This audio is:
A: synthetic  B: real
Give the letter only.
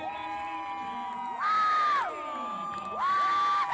B